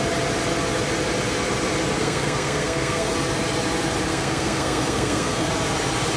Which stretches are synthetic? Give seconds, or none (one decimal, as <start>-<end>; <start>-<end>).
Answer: 2.0-3.1; 4.1-5.5